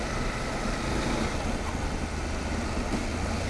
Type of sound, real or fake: real